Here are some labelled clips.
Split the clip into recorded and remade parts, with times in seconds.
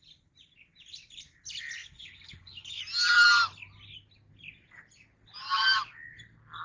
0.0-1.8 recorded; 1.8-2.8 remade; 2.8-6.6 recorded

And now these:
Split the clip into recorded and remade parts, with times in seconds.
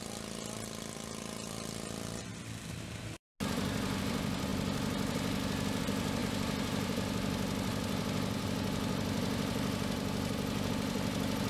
0.0-11.5 recorded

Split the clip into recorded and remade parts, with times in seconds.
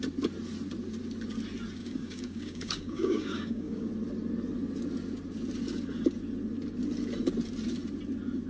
0.0-1.8 recorded; 1.8-3.9 remade; 3.9-8.5 recorded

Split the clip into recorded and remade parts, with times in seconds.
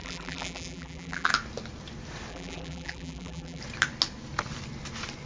0.0-1.3 remade; 1.3-2.3 recorded; 2.3-3.6 remade; 3.6-5.3 recorded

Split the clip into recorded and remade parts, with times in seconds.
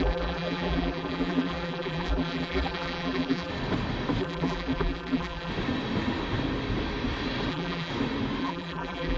0.0-3.5 remade; 3.5-4.2 recorded; 4.2-5.5 remade; 5.5-7.5 recorded; 7.5-7.9 remade; 7.9-8.4 recorded; 8.4-9.2 remade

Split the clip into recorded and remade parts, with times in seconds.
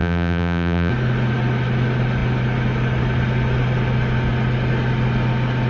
0.0-0.9 remade; 0.9-5.7 recorded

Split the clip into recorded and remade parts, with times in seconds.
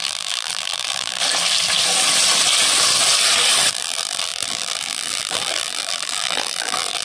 0.0-1.2 remade; 1.2-3.7 recorded; 3.7-7.0 remade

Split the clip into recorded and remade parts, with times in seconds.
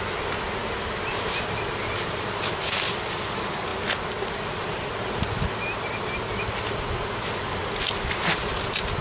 0.0-9.0 recorded